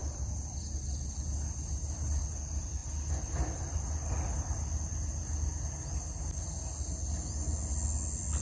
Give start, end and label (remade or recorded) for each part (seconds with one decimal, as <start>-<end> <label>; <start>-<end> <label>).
0.0-8.4 recorded